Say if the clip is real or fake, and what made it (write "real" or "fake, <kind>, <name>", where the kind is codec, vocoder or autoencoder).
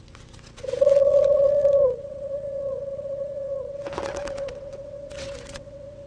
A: fake, vocoder, WaveNeXt